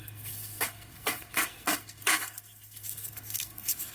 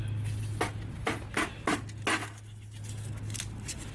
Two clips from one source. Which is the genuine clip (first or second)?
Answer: second